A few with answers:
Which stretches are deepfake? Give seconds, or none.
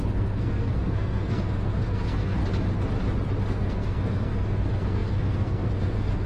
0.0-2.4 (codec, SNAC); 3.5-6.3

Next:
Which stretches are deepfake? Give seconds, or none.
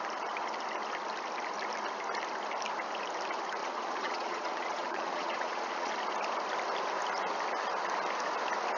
3.6-5.9 (vocoder, Vocos)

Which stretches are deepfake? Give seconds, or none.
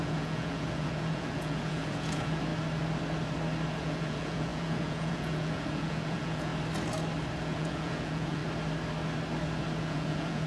0.0-2.5 (vocoder, Vocos); 3.8-6.5; 7.4-8.4; 9.8-10.5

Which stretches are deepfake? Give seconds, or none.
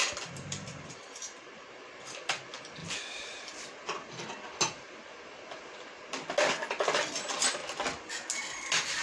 0.0-1.8 (vocoder, BigVGAN v2)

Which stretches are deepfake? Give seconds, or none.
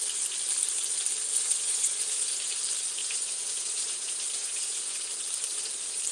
1.3-2.5 (vocoder, Vocos); 3.0-5.1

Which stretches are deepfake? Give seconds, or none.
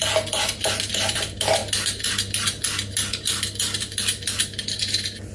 none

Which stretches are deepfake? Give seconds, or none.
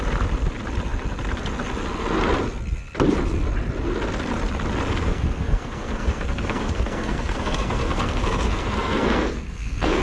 4.9-10.0 (codec, SNAC)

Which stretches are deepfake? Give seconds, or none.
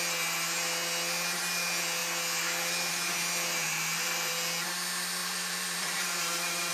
3.6-4.3 (vocoder, BigVGAN v2); 5.2-6.7